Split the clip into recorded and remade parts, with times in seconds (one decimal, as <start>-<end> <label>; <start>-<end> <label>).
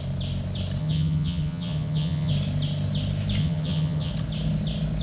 0.0-0.8 recorded; 0.8-2.3 remade; 2.3-3.4 recorded; 3.4-4.1 remade; 4.1-5.0 recorded